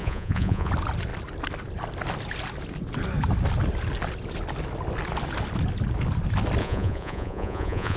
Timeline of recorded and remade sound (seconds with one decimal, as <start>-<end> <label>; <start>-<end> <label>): 0.0-0.7 remade; 0.7-6.6 recorded; 6.6-8.0 remade